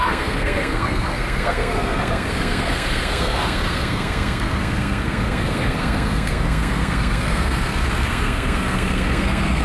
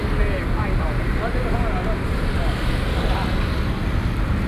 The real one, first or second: second